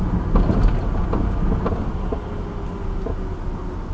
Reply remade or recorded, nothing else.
recorded